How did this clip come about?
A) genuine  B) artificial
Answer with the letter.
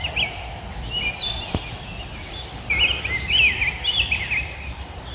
A